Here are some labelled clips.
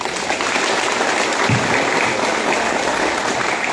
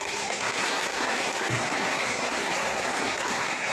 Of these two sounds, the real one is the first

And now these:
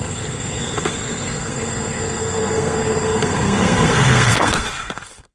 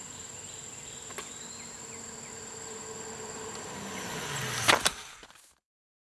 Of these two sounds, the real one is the second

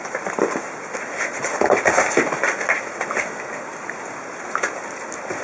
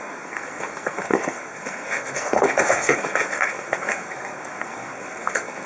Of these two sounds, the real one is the first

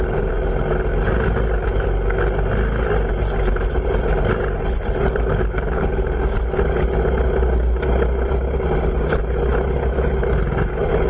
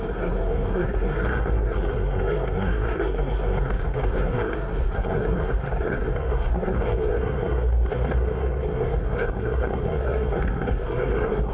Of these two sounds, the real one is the first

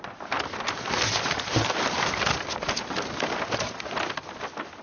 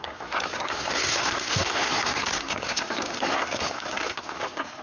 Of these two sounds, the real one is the first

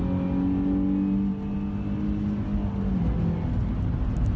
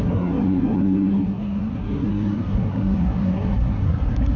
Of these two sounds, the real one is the first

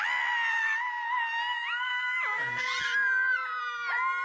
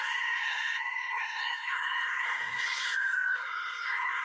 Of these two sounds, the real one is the first